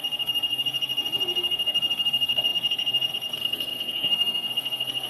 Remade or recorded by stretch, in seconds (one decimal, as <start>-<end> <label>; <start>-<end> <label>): 0.0-5.1 remade